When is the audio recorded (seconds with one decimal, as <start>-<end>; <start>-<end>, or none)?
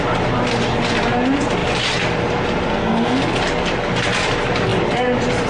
0.0-2.7; 3.2-5.5